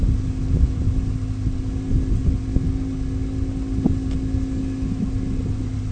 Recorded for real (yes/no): yes